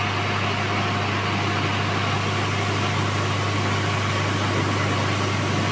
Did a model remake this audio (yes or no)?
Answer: no